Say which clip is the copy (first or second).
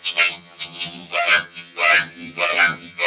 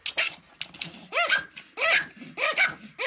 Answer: first